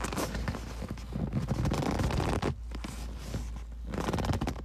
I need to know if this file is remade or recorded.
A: recorded